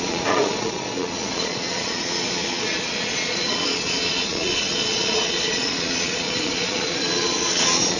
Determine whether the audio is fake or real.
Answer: fake